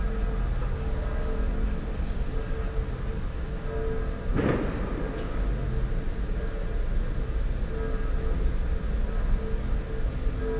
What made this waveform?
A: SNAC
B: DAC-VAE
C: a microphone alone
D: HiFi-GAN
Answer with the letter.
C